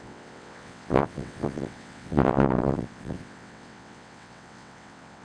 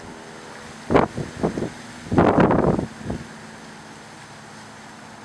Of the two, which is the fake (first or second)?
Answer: first